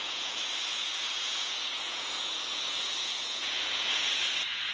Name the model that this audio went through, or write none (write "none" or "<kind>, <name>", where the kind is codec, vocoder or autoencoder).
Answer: vocoder, Vocos